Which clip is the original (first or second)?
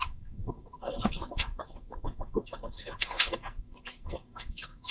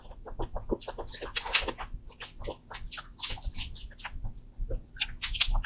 second